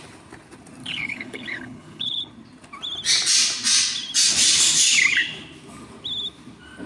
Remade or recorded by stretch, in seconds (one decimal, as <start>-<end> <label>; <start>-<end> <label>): 0.0-0.8 recorded; 0.8-2.3 remade; 2.3-6.9 recorded